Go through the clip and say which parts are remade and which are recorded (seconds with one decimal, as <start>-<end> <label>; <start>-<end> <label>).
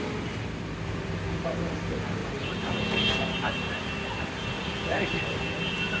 0.0-6.0 recorded